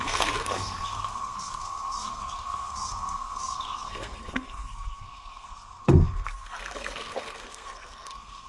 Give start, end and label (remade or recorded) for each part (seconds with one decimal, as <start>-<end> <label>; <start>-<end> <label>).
0.0-8.5 remade